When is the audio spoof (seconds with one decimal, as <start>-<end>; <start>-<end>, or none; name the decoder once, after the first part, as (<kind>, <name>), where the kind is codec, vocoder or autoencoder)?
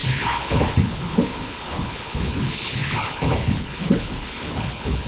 0.0-5.1 (codec, HILCodec)